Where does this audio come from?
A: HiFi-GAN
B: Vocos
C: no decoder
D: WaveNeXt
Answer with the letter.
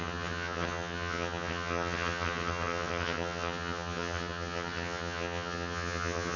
A